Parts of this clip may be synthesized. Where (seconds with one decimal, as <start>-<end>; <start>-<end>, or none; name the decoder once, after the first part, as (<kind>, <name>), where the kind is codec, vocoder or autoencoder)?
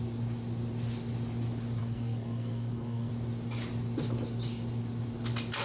1.8-3.1 (codec, SNAC)